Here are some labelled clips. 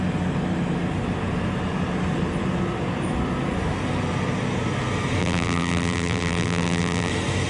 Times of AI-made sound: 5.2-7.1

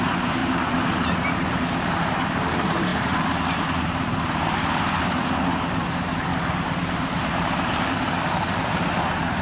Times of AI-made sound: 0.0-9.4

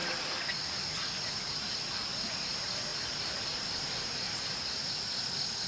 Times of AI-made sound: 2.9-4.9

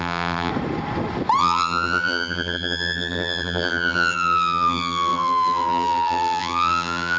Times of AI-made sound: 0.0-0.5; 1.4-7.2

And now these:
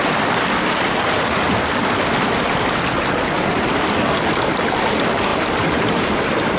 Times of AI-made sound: 5.3-6.1